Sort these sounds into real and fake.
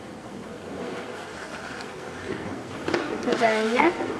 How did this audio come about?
fake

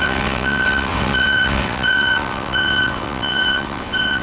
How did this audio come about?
fake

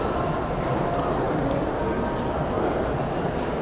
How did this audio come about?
real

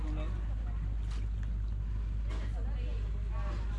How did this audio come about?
real